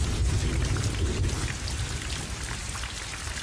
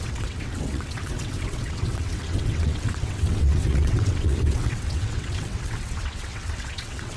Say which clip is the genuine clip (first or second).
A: first